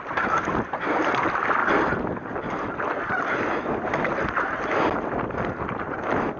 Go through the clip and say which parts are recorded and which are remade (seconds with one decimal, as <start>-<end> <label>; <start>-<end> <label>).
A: 0.0-6.4 recorded